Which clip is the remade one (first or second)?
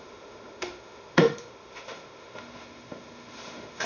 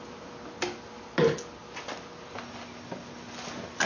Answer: first